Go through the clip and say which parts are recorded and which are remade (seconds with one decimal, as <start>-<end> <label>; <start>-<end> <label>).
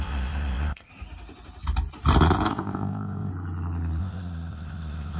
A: 0.0-0.9 remade; 0.9-2.5 recorded; 2.5-3.3 remade; 3.3-4.0 recorded; 4.0-5.2 remade